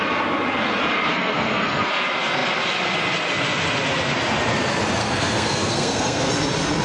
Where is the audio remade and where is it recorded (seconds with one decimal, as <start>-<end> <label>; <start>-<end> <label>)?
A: 0.0-1.1 recorded; 1.1-1.9 remade; 1.9-5.0 recorded; 5.0-6.3 remade; 6.3-6.8 recorded